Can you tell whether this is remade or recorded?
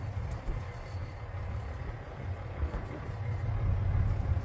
recorded